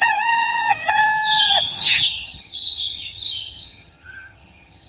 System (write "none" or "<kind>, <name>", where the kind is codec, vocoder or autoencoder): vocoder, HiFi-GAN